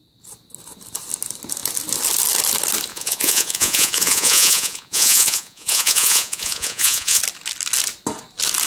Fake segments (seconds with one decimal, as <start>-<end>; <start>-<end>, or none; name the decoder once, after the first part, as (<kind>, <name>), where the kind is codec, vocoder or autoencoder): 2.9-7.2 (vocoder, Vocos)